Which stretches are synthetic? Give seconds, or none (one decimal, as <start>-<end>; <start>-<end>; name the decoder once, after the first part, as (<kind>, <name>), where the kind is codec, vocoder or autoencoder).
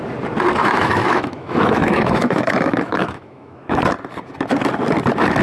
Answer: 0.6-3.8 (autoencoder, DAC-VAE)